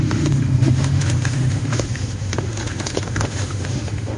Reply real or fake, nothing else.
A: fake